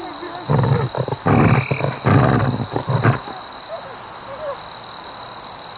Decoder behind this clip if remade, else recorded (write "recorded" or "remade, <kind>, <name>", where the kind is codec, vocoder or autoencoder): recorded